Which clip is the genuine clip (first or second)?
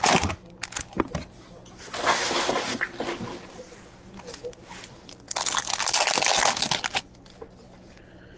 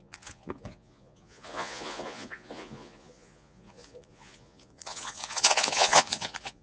first